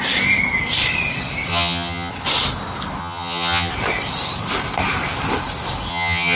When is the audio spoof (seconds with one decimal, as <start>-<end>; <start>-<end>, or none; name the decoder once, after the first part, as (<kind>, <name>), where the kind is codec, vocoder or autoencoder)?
1.5-2.1 (vocoder, HiFi-GAN); 3.0-3.7; 5.9-6.4